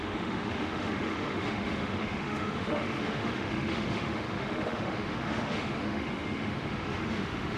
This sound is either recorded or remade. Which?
remade